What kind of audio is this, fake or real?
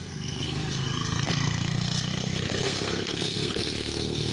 fake